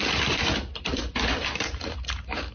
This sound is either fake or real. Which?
fake